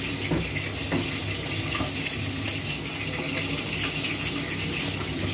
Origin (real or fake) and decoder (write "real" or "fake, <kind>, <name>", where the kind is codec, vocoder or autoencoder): real